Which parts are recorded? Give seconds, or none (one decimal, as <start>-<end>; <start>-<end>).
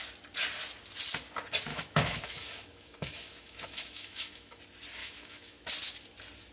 0.0-1.7; 4.6-5.0; 5.6-6.5